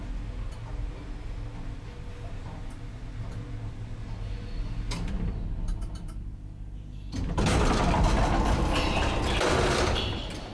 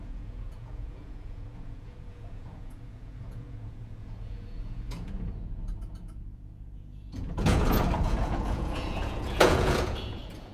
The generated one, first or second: second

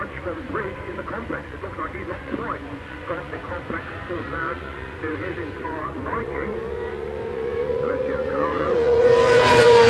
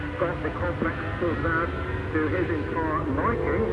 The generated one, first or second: first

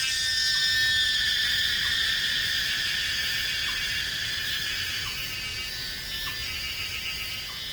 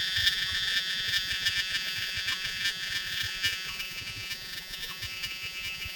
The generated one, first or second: second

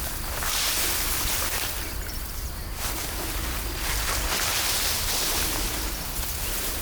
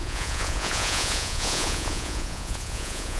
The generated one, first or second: second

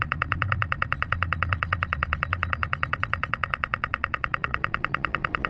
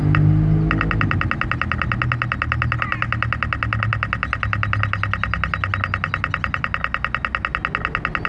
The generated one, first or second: first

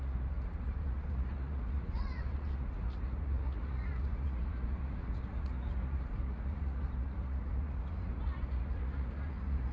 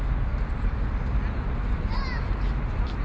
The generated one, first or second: first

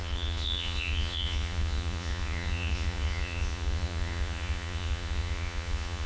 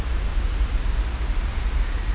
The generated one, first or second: first